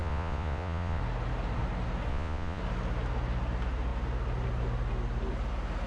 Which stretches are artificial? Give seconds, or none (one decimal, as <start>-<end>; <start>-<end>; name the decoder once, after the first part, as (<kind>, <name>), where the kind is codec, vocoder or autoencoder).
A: 0.0-1.0 (vocoder, Vocos); 2.1-2.6